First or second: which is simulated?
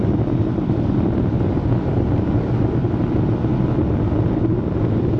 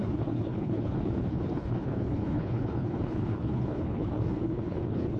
second